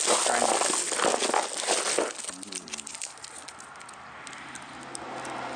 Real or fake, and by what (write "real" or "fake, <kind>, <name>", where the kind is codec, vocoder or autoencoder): real